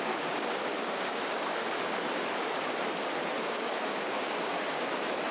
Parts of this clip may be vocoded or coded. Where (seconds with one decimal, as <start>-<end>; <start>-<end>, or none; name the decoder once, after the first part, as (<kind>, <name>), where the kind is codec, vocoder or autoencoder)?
0.0-1.6 (codec, DAC); 3.5-5.3